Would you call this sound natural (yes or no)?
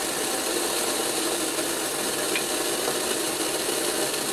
yes